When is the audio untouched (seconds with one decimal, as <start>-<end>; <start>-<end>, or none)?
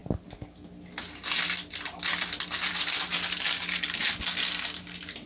0.0-5.3